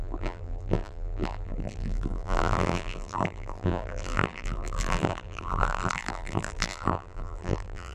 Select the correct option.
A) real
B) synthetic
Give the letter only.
B